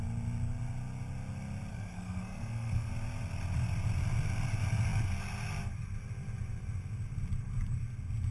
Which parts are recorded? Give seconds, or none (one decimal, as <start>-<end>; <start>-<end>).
0.0-1.7; 2.9-8.3